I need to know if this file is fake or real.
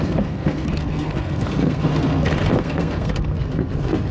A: fake